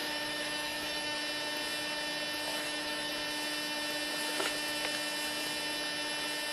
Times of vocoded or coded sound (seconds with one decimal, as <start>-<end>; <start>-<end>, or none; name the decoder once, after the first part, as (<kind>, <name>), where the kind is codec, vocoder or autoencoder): 0.0-1.2 (autoencoder, DAC-VAE); 2.5-3.1

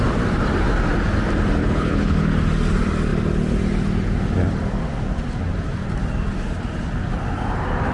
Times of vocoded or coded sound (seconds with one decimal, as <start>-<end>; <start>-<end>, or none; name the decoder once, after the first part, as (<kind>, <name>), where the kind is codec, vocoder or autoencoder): 1.6-2.3 (codec, HILCodec)